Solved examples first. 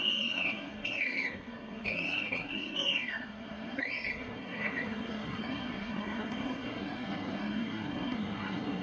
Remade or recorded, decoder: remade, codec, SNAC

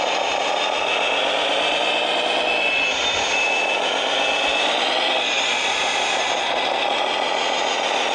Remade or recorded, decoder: recorded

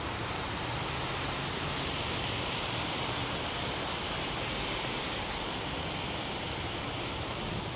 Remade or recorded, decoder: recorded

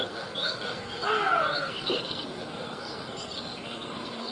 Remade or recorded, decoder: remade, codec, SNAC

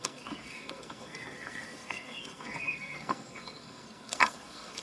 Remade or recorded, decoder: remade, codec, SNAC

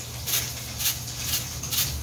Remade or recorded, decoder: recorded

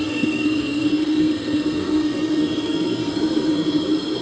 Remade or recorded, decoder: remade, codec, SNAC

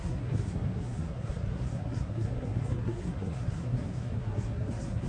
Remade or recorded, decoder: remade, codec, SNAC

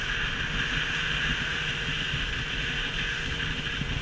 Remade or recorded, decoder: recorded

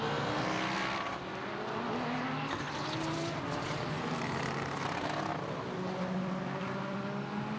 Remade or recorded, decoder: recorded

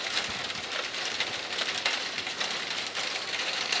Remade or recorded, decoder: recorded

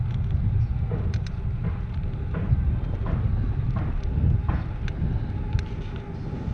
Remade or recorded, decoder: recorded